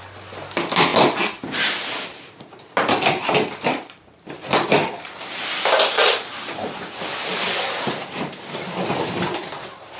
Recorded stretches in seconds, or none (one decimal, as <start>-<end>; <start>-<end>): 0.0-10.0